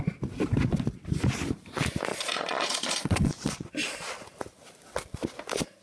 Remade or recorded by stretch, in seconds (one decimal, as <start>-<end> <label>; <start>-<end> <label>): 0.0-2.1 recorded; 2.1-3.3 remade; 3.3-5.8 recorded